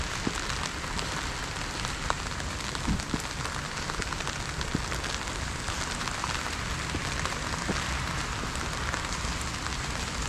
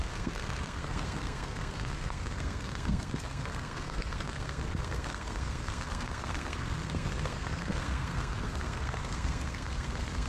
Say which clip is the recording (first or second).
first